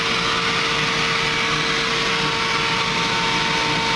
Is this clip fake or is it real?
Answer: real